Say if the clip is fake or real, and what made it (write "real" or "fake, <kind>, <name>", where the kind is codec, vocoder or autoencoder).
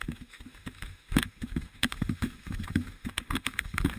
fake, autoencoder, DAC-VAE